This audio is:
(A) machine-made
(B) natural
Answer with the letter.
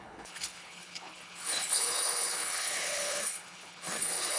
A